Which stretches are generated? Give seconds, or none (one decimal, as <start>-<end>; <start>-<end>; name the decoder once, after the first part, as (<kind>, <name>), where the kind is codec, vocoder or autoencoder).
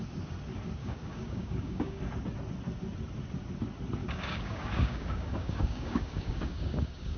0.8-2.0 (codec, DAC); 4.0-7.2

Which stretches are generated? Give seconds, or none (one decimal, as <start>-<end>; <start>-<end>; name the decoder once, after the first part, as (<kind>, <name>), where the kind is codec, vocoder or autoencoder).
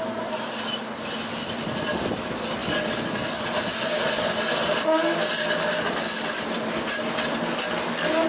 none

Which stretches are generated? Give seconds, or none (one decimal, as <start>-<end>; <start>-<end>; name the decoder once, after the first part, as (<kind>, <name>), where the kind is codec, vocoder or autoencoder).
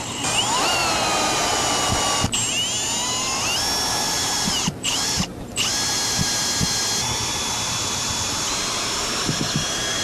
0.0-0.8 (vocoder, BigVGAN v2); 3.9-5.3; 7.5-10.0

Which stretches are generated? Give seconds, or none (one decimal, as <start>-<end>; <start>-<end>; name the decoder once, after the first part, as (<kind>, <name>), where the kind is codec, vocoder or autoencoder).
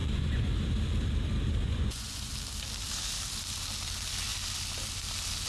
0.0-0.5 (vocoder, Vocos); 1.6-2.3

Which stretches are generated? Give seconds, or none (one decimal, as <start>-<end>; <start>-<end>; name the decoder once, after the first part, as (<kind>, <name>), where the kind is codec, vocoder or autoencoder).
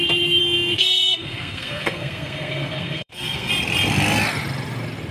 0.4-3.5 (codec, SNAC)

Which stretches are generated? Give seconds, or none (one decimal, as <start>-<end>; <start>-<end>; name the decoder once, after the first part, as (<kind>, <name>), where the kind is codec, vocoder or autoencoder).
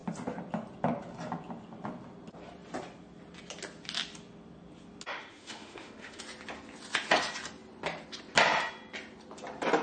5.1-6.2 (autoencoder, DAC-VAE)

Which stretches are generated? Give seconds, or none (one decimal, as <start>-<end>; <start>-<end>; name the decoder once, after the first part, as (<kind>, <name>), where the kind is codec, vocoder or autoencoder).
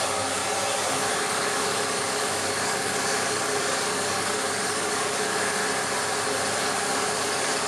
0.0-0.4 (codec, DAC); 1.1-5.6; 6.6-7.7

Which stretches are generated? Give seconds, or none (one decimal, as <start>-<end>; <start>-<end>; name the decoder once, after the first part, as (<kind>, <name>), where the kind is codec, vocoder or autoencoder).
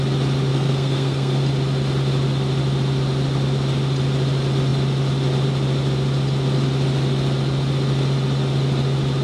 0.5-1.4 (codec, SNAC)